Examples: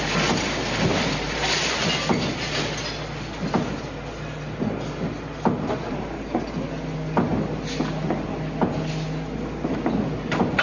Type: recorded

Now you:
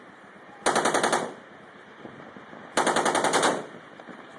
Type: recorded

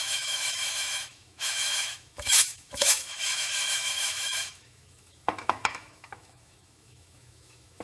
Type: remade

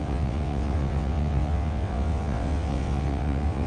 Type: remade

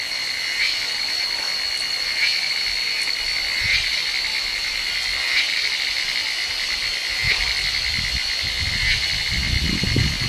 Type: recorded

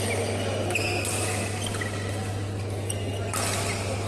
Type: recorded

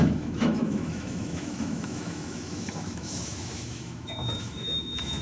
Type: remade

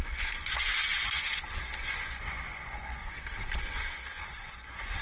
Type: remade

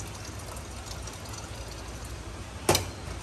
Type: recorded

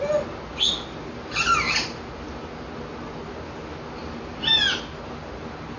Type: recorded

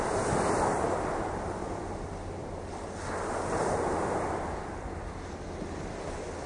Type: recorded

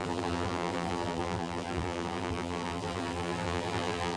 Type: remade